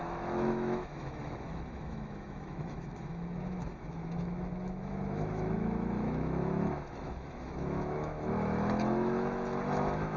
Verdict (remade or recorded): remade